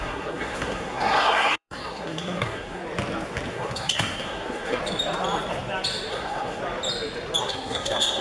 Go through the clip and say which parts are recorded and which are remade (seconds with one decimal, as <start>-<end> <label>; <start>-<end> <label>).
0.0-2.8 remade; 2.8-3.5 recorded; 3.5-4.8 remade; 4.8-6.1 recorded; 6.1-6.6 remade; 6.6-7.4 recorded; 7.4-8.2 remade